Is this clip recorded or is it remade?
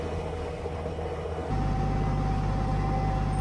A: recorded